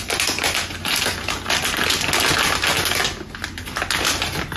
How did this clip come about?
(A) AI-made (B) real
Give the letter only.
B